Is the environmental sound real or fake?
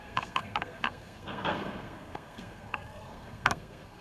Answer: fake